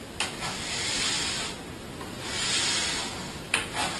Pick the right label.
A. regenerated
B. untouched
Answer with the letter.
B